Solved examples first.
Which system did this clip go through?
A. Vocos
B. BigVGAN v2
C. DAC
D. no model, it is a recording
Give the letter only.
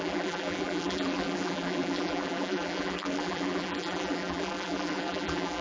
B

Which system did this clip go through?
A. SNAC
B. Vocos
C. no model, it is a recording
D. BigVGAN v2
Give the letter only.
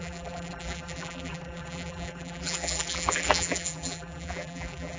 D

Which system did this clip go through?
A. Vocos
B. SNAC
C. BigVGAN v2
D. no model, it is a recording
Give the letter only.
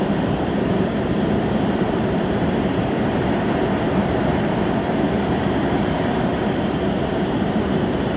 C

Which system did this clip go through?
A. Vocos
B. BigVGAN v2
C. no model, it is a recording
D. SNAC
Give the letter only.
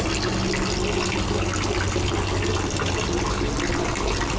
C